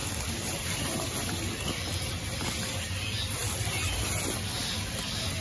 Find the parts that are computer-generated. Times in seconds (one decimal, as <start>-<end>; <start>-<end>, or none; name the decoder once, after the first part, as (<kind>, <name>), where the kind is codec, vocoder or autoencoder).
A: none